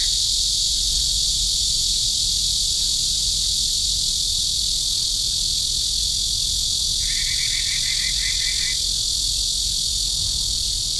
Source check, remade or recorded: recorded